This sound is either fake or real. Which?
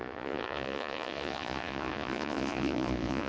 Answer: fake